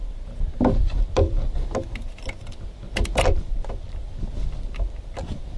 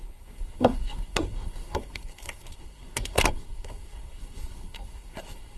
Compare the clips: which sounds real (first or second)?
first